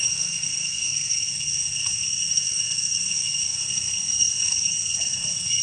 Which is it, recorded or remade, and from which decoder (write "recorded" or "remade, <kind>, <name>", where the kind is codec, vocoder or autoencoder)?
remade, codec, SNAC